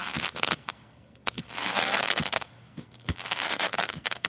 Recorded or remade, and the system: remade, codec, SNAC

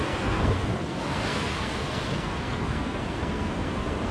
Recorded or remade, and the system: remade, codec, SNAC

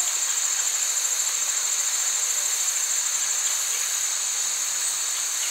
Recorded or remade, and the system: recorded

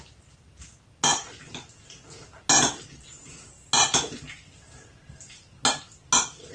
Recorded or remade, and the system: recorded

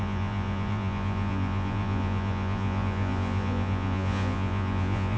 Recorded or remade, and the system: remade, vocoder, Vocos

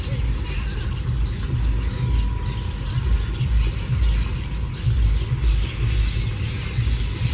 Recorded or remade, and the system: recorded